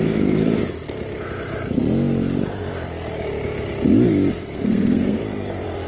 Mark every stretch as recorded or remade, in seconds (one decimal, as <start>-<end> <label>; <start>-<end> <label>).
0.0-4.4 recorded; 4.4-5.2 remade; 5.2-5.9 recorded